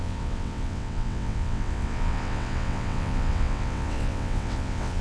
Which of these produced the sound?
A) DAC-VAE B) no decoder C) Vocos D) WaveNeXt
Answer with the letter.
D